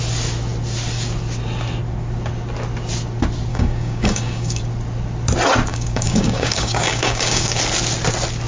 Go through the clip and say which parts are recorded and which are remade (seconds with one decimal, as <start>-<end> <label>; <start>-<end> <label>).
0.0-3.5 recorded; 3.5-4.6 remade; 4.6-5.7 recorded; 5.7-7.6 remade; 7.6-8.5 recorded